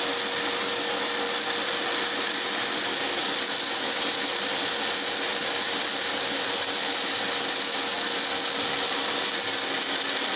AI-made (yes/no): no